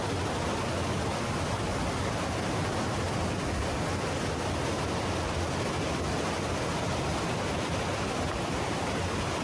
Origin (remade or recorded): recorded